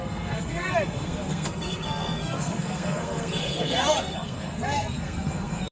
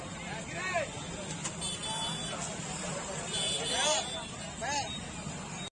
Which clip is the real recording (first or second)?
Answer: second